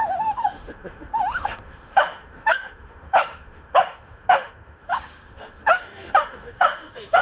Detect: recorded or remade remade